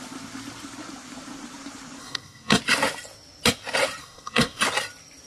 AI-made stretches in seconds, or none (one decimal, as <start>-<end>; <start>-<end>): 2.0-2.6; 4.0-4.6